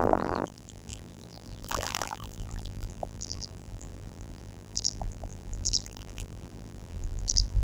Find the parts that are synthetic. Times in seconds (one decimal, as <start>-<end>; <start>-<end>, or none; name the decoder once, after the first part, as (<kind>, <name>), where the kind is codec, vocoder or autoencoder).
0.0-7.6 (vocoder, BigVGAN v2)